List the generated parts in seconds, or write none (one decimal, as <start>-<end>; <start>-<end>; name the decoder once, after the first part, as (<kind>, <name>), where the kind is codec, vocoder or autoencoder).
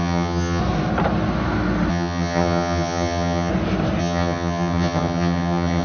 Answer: 0.0-0.6 (vocoder, HiFi-GAN); 1.9-3.5; 4.0-5.8